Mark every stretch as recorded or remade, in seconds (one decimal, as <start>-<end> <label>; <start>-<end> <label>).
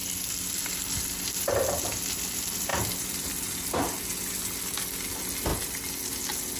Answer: 0.0-6.6 recorded